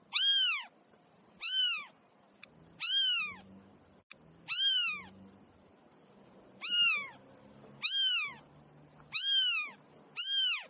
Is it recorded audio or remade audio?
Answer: recorded